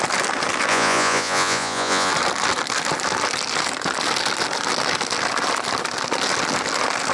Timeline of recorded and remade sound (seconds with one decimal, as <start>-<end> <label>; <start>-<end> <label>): 0.0-0.7 recorded; 0.7-2.1 remade; 2.1-7.1 recorded